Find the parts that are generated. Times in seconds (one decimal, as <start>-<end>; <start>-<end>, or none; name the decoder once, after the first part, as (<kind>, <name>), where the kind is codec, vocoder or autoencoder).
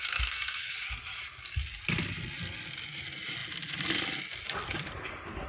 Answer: 0.0-0.7 (codec, SNAC)